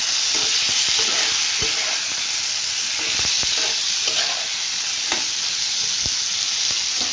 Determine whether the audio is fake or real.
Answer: real